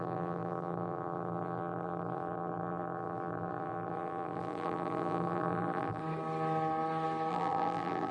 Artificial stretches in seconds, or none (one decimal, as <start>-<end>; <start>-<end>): 0.0-6.0; 7.3-8.1